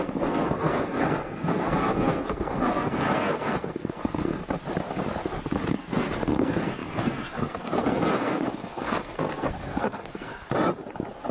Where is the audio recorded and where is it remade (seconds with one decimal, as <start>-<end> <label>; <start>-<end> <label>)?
0.0-4.4 remade; 4.4-5.7 recorded; 5.7-10.3 remade; 10.3-11.3 recorded